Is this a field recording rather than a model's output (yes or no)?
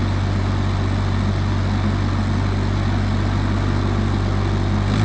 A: yes